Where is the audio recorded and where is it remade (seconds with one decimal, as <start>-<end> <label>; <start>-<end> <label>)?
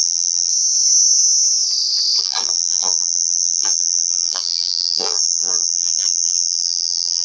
0.0-0.5 remade; 0.5-2.2 recorded; 2.2-7.2 remade